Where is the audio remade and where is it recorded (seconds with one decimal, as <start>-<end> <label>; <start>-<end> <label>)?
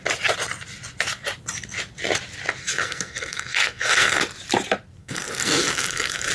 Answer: 0.0-2.6 recorded; 2.6-4.2 remade; 4.2-5.0 recorded; 5.0-6.3 remade